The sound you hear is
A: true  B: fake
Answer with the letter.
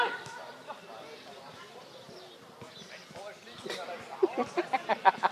B